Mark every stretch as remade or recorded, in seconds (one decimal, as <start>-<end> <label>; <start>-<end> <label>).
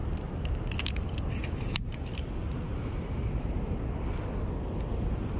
0.0-0.6 remade; 0.6-1.4 recorded; 1.4-3.6 remade; 3.6-5.4 recorded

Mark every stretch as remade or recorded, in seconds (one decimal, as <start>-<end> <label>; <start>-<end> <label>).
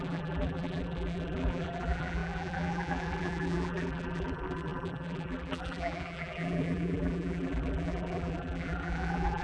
0.0-9.4 remade